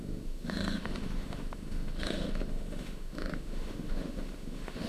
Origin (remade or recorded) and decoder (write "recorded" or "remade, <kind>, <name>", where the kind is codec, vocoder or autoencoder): remade, autoencoder, DAC-VAE